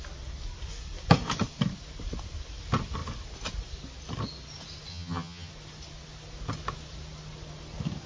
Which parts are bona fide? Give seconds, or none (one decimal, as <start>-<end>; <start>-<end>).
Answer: 0.0-4.9; 5.5-8.1